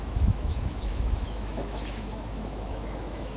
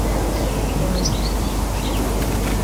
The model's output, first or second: first